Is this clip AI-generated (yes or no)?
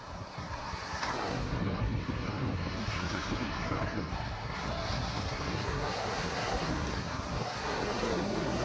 yes